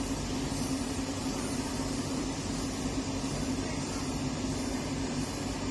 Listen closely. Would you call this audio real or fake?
fake